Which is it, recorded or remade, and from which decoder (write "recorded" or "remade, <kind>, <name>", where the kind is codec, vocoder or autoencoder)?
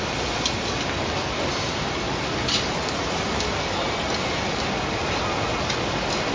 recorded